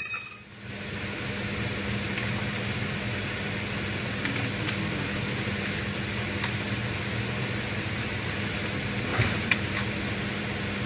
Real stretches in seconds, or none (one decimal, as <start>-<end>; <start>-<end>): 0.0-10.9